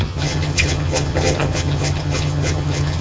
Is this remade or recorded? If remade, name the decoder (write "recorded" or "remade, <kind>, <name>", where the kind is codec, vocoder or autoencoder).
remade, vocoder, HiFi-GAN